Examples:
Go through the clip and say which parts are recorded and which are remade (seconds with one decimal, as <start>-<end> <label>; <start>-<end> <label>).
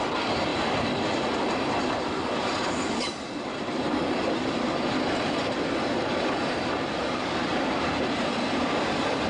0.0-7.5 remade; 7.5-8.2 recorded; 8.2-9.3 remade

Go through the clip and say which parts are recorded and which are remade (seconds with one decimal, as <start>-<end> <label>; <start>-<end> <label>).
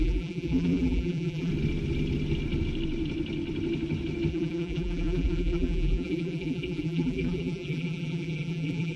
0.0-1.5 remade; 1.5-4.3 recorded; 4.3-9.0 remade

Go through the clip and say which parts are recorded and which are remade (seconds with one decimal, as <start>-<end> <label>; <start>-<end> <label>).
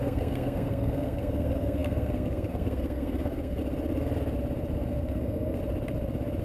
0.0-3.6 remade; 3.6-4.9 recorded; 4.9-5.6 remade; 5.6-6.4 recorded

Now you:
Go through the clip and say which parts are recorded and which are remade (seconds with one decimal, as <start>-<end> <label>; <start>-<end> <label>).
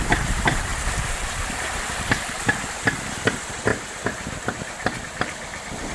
0.0-0.7 remade; 0.7-3.1 recorded; 3.1-3.7 remade; 3.7-5.9 recorded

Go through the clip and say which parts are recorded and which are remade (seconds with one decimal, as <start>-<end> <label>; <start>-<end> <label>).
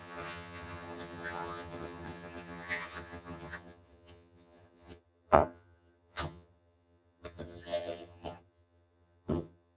0.0-9.8 remade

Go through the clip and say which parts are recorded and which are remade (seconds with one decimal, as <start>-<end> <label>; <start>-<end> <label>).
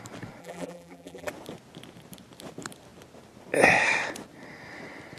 0.0-0.4 recorded; 0.4-1.3 remade; 1.3-5.2 recorded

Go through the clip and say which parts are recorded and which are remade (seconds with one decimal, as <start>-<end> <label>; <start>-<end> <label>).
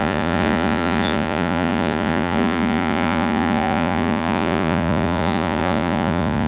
0.0-6.5 remade